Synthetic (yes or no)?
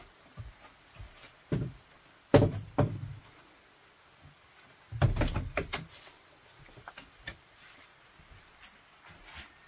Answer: no